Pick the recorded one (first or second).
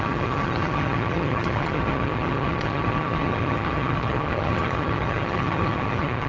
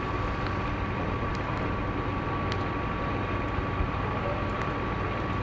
second